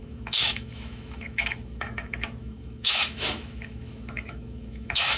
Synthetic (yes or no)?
yes